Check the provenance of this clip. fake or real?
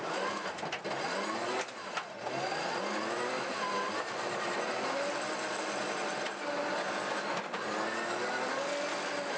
real